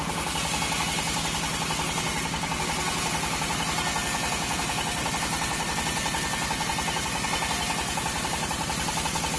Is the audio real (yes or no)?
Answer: yes